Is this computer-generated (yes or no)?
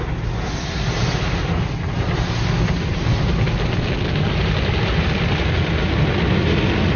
no